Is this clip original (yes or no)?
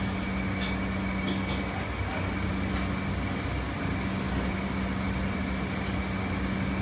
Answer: yes